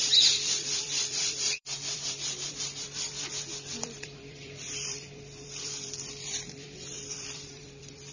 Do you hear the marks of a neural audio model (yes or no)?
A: yes